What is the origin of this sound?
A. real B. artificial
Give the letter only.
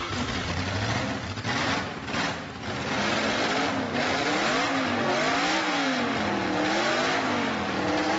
A